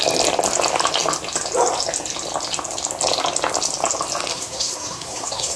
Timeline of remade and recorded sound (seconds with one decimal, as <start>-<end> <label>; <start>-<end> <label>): 0.0-4.3 recorded; 4.3-5.6 remade